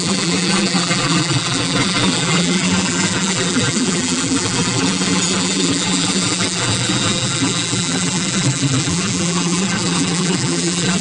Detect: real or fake fake